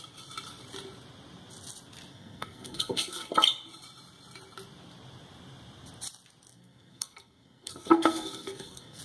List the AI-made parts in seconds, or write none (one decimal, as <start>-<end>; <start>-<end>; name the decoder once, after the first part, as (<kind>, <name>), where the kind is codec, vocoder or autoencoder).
2.1-3.3 (codec, SNAC); 6.5-9.0